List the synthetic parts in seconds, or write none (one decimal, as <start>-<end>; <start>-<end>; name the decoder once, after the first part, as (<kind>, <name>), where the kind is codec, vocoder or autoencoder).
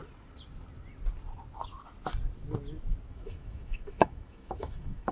3.1-5.1 (autoencoder, DAC-VAE)